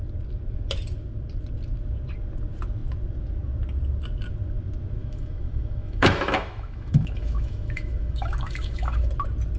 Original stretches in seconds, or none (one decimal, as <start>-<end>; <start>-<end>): 0.0-5.0; 9.1-9.6